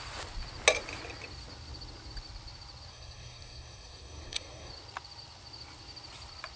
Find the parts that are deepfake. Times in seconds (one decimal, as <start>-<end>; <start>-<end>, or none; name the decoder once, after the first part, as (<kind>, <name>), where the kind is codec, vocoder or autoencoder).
2.9-4.7 (codec, SNAC)